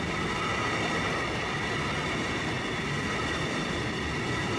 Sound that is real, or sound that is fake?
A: real